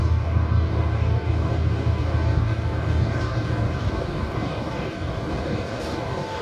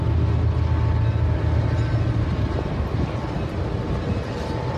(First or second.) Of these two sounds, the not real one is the first